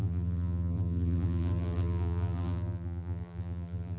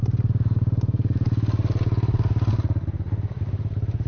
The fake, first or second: first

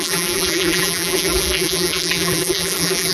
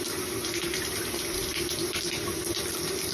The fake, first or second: first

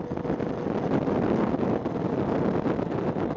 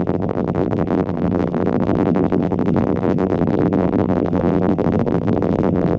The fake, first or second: second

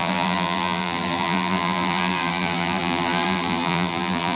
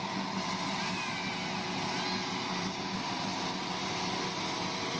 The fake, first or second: first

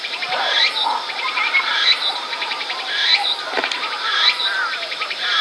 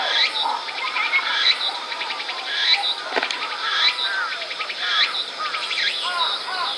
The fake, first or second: first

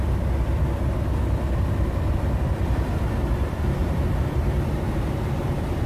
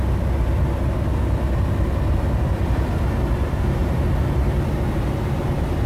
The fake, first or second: first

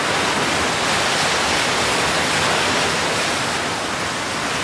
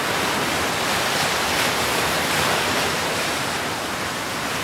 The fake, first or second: second